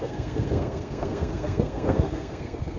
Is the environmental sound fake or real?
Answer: fake